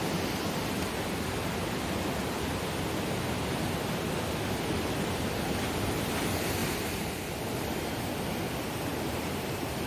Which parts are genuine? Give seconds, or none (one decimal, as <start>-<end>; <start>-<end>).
0.0-6.6; 7.4-8.9